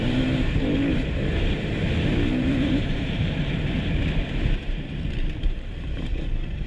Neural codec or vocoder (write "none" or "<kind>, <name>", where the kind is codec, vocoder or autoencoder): vocoder, BigVGAN v2